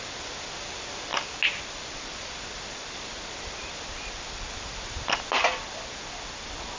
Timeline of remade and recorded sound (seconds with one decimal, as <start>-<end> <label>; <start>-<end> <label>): 0.0-6.8 recorded